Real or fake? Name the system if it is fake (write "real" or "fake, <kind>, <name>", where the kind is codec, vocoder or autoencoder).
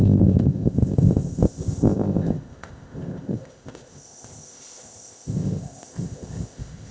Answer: fake, codec, ZipCodec